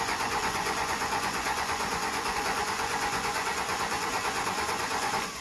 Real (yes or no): no